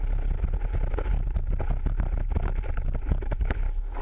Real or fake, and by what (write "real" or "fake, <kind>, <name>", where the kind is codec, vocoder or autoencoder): real